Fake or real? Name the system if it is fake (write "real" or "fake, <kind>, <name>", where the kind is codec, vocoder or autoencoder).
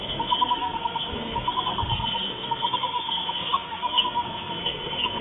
fake, codec, SNAC